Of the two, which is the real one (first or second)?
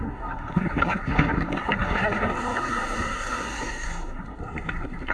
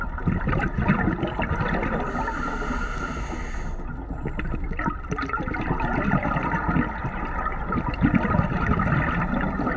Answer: second